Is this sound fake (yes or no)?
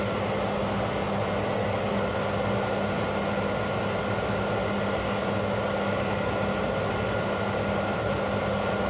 no